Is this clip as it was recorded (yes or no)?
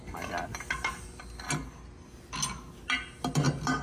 yes